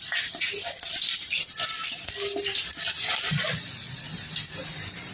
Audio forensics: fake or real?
real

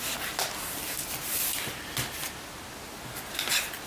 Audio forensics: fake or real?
real